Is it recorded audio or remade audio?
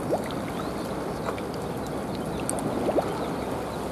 recorded